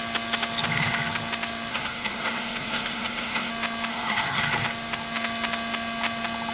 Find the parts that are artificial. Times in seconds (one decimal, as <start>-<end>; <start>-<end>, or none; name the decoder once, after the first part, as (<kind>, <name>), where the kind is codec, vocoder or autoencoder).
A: 1.7-3.5 (codec, SNAC); 3.9-4.4